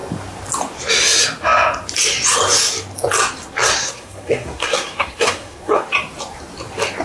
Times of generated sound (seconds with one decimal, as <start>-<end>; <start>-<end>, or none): 3.8-5.8